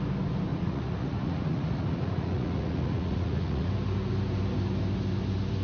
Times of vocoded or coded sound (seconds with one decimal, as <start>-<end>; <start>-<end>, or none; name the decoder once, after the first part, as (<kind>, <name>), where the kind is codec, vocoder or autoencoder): 0.5-3.7 (vocoder, Vocos)